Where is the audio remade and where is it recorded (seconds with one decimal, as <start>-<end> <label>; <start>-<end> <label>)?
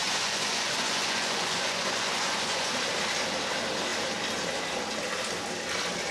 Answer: 0.0-2.7 remade; 2.7-6.1 recorded